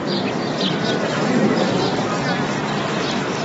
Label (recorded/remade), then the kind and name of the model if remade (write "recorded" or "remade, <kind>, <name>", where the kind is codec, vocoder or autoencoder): recorded